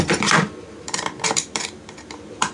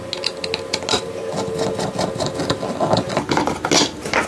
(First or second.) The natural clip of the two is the second